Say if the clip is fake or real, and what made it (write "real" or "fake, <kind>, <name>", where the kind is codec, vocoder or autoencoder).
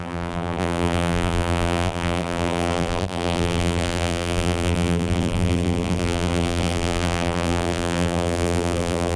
fake, vocoder, BigVGAN v2